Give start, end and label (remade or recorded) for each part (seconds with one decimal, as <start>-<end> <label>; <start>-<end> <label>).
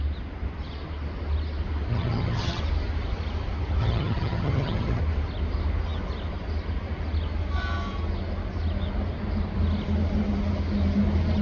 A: 0.0-1.9 recorded; 1.9-2.6 remade; 2.6-3.8 recorded; 3.8-5.0 remade; 5.0-11.4 recorded